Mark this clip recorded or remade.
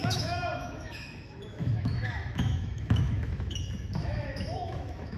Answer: remade